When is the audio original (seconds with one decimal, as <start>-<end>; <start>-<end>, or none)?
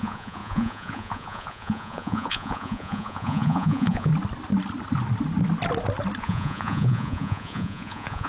4.1-6.2